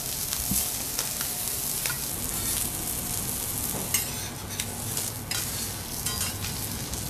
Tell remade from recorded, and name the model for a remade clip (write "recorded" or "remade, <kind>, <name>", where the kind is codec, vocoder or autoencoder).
recorded